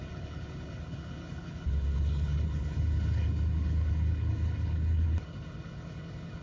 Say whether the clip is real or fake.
fake